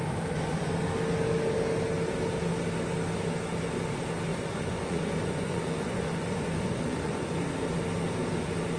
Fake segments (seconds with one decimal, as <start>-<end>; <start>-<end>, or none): 4.3-7.4